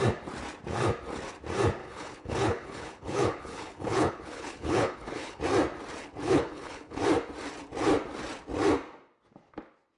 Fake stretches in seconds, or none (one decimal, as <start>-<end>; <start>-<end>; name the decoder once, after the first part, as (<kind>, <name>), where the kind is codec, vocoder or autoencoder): 1.8-5.4 (codec, HILCodec); 6.0-7.0